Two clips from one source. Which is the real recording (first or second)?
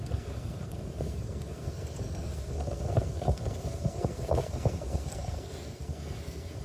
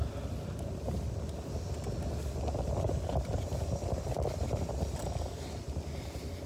second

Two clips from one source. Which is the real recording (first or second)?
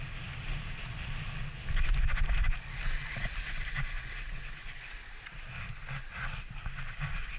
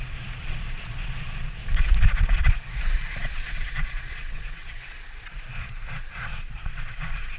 first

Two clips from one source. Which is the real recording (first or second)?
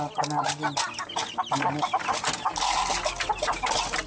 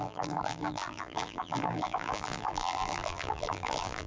first